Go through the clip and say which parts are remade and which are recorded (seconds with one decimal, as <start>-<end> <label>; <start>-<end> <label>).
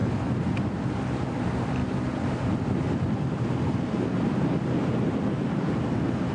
0.0-1.4 recorded; 1.4-1.8 remade; 1.8-5.4 recorded; 5.4-6.3 remade